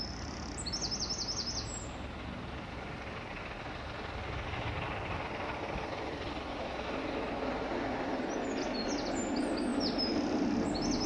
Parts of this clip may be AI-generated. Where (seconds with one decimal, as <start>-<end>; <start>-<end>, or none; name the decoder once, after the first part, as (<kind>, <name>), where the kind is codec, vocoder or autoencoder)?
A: 9.7-10.4 (vocoder, BigVGAN v2)